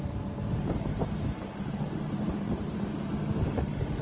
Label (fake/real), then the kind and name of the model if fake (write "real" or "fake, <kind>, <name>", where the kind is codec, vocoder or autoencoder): fake, vocoder, BigVGAN v2